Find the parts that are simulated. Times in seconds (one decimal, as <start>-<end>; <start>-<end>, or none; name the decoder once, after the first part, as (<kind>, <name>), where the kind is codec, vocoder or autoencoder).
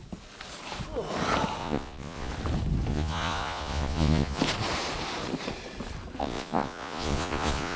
1.6-2.3 (vocoder, Vocos); 2.9-4.4; 6.2-7.8